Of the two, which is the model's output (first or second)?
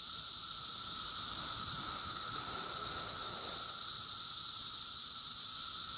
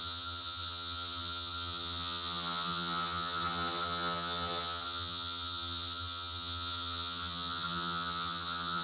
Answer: second